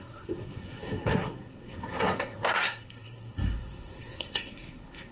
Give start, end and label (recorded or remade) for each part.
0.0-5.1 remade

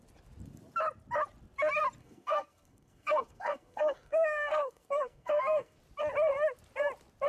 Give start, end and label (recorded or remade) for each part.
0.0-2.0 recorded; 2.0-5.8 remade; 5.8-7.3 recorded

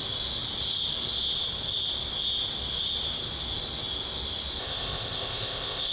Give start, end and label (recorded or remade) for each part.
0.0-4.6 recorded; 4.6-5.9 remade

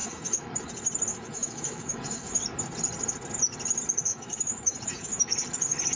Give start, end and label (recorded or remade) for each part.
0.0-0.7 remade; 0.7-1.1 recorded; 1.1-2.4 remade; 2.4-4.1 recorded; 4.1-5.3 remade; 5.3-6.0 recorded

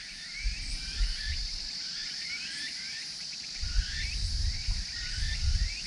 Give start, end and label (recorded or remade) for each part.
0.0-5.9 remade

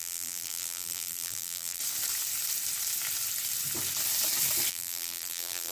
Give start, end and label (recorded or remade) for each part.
0.0-1.8 remade; 1.8-4.7 recorded; 4.7-5.7 remade

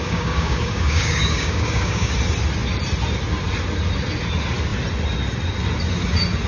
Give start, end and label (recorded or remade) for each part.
0.0-2.1 remade; 2.1-6.5 recorded